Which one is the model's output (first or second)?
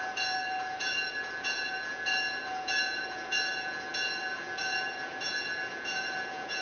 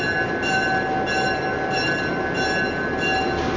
first